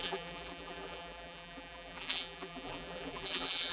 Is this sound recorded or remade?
remade